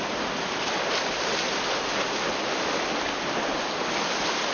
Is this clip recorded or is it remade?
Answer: recorded